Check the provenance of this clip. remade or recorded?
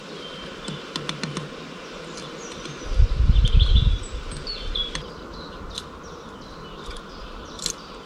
recorded